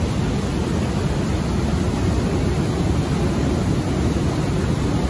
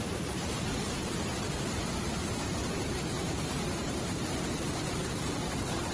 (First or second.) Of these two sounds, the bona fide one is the first